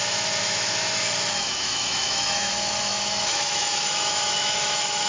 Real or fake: fake